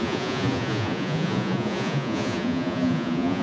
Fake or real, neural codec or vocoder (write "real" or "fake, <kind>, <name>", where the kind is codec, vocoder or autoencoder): fake, vocoder, Vocos